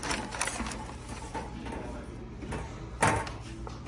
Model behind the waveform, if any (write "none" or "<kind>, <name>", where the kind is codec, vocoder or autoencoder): none